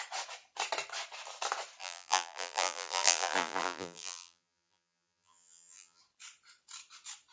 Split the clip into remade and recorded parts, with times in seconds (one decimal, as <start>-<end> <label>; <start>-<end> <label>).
0.0-1.8 recorded; 1.8-6.0 remade; 6.0-7.3 recorded